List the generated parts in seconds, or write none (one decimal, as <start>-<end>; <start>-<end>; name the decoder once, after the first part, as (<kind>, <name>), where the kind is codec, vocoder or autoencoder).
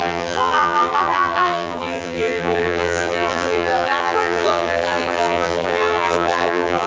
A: 0.0-6.9 (vocoder, BigVGAN v2)